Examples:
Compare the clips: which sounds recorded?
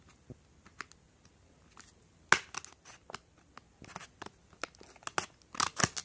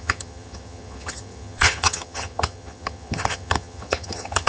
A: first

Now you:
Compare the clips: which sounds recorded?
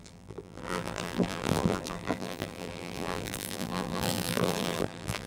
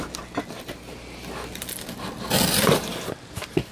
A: second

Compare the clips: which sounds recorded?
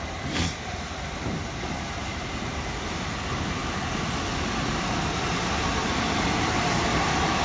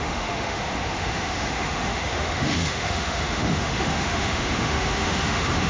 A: first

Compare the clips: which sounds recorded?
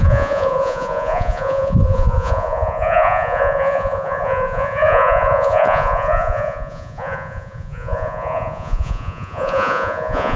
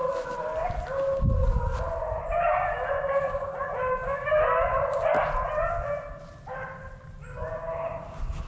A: second